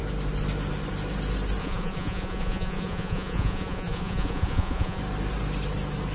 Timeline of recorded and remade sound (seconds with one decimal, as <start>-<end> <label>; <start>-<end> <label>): 0.0-1.6 recorded; 1.6-5.0 remade; 5.0-6.1 recorded